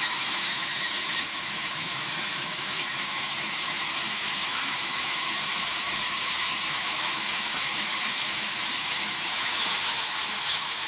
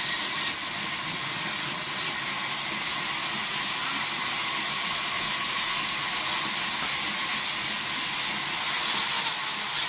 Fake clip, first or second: first